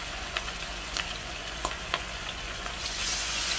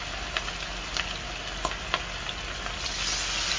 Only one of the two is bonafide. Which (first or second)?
second